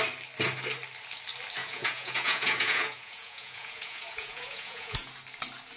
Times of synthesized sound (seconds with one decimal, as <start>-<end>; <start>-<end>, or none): 1.6-5.1

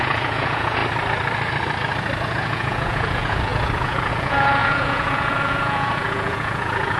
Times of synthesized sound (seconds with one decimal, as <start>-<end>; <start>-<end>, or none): 0.0-0.8; 2.2-7.0